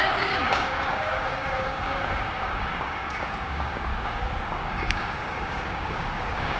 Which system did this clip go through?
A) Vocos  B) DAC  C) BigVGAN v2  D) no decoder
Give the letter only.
B